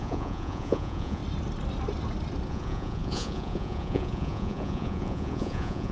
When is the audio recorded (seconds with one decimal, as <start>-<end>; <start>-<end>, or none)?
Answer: 1.2-2.5